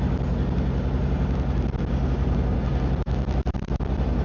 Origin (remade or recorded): recorded